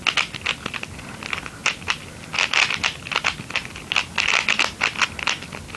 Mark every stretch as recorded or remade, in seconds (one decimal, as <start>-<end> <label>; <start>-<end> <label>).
0.0-5.8 recorded